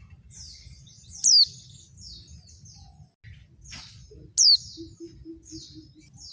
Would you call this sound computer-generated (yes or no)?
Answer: no